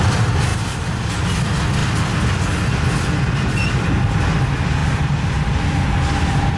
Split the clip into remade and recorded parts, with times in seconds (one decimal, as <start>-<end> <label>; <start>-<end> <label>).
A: 0.0-0.5 recorded; 0.5-1.1 remade; 1.1-6.6 recorded